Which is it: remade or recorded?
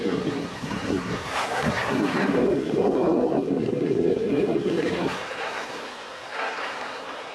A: remade